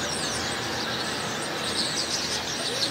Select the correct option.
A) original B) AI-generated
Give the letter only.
A